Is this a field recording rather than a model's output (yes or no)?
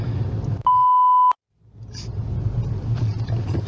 yes